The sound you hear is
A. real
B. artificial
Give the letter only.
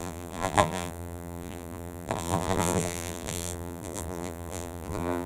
B